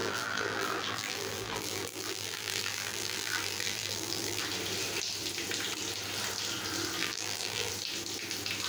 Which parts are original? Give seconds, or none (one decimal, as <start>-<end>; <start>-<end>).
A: 4.4-7.0; 7.7-8.7